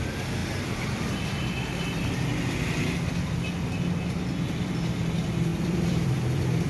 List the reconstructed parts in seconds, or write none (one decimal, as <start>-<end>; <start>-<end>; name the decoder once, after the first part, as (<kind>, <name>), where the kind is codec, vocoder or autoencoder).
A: 0.4-2.1 (vocoder, BigVGAN v2); 5.5-6.7